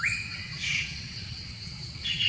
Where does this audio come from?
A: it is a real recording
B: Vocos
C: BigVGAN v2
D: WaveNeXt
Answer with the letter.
D